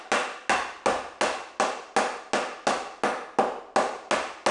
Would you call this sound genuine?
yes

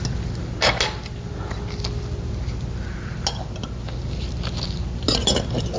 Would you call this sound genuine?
yes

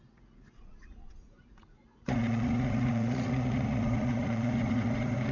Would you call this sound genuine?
no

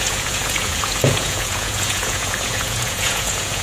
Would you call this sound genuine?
no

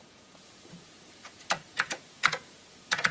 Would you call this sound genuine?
no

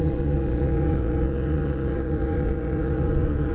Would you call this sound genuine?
no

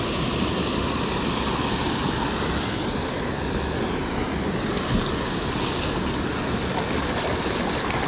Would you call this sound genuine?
yes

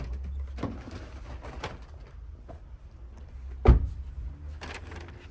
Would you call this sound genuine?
yes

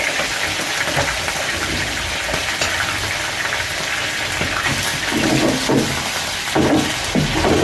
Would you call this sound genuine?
yes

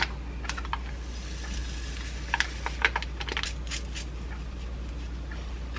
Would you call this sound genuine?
yes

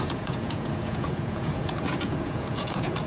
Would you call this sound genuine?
no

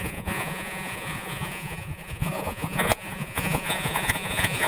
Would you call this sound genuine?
no